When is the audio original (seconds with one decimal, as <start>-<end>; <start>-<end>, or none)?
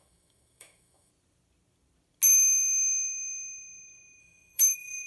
1.1-4.2